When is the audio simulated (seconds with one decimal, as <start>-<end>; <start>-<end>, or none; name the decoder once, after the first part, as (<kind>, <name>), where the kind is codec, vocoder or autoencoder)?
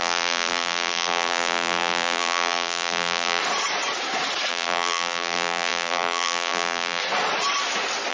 0.0-3.4 (vocoder, BigVGAN v2); 4.5-7.0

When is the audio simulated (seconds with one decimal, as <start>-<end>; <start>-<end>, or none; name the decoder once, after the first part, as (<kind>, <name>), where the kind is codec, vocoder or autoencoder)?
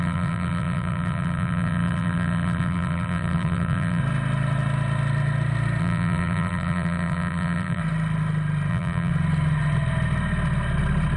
0.0-4.0 (vocoder, BigVGAN v2); 5.8-7.8; 8.7-9.1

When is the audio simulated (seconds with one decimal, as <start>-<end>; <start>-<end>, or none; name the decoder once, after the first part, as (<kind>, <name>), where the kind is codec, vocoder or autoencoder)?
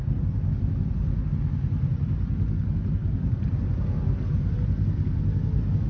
3.0-4.5 (vocoder, BigVGAN v2)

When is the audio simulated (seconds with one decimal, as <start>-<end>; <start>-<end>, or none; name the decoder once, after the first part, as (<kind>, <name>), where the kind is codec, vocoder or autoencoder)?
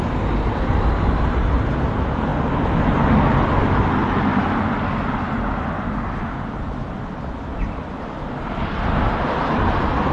none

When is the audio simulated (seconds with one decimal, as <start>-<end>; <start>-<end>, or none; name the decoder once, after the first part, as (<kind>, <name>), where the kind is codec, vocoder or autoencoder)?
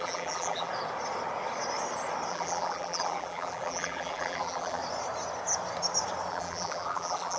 0.0-0.7 (vocoder, BigVGAN v2); 2.3-4.8; 6.3-7.4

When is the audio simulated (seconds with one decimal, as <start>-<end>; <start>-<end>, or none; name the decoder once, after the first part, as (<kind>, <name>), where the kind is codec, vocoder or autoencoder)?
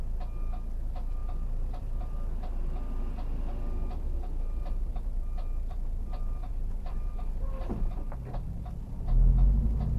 1.2-2.0 (vocoder, BigVGAN v2); 6.5-8.6